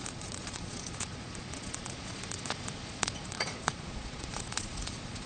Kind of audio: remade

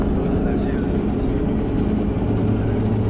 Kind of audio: recorded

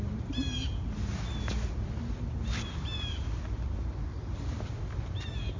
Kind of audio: recorded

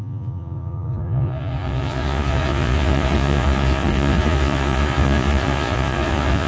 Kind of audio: remade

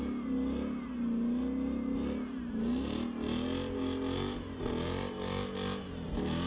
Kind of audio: recorded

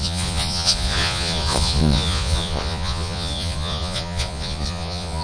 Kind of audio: remade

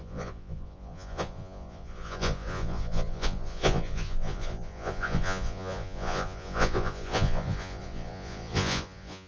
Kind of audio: remade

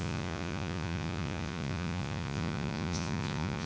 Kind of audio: remade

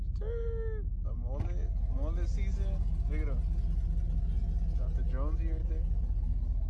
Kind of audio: recorded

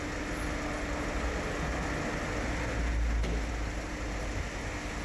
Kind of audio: recorded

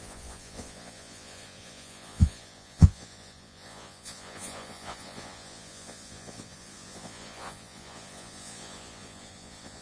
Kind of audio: remade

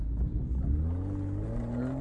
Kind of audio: recorded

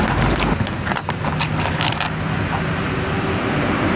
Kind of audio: recorded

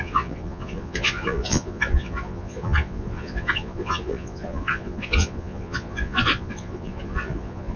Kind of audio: remade